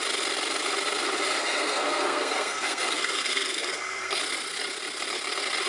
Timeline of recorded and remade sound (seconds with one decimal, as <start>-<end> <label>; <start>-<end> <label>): 0.0-1.4 recorded; 1.4-4.2 remade; 4.2-5.7 recorded